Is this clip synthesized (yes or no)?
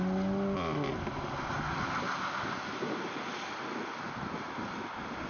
no